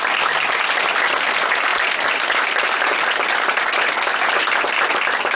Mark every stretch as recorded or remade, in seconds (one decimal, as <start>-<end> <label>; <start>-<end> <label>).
0.0-5.3 recorded